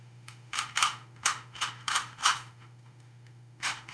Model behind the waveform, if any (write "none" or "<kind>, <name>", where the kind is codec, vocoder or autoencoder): autoencoder, DAC-VAE